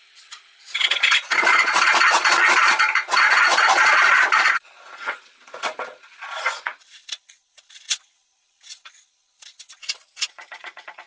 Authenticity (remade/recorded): remade